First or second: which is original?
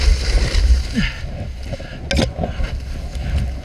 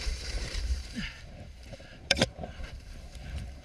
first